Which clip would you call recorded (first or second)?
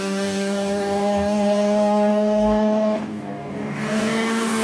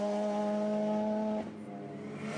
second